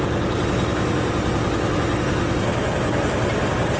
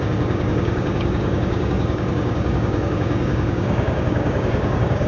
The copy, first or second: second